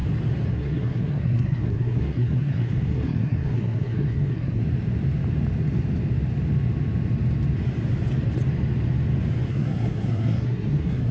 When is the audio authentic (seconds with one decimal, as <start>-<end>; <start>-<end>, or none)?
0.0-0.5; 4.6-9.5